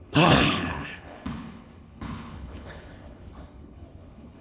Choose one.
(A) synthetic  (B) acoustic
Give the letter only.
A